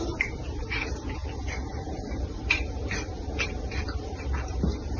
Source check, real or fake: fake